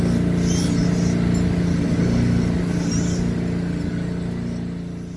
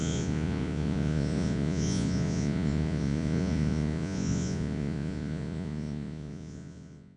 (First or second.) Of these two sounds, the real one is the first